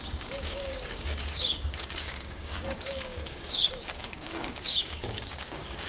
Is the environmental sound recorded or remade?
remade